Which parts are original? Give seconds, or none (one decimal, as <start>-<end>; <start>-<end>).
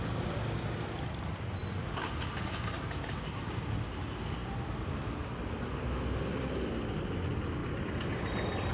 0.0-8.7